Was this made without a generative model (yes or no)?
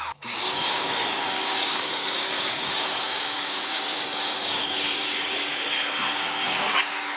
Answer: no